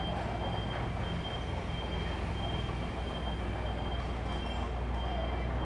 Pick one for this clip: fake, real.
real